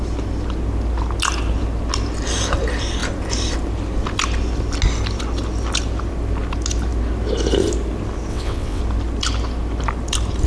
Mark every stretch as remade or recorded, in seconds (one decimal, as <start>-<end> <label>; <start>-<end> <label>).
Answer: 0.0-8.3 recorded; 8.3-8.8 remade; 8.8-10.5 recorded